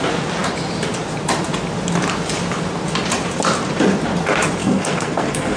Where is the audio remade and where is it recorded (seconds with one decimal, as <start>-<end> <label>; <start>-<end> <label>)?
0.0-4.6 recorded; 4.6-5.6 remade